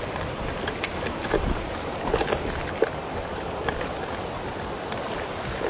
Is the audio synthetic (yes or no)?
no